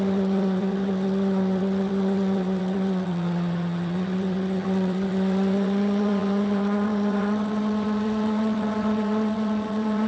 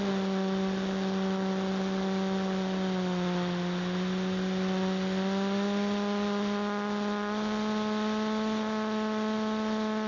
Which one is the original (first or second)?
second